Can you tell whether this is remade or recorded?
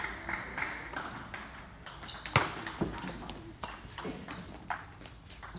recorded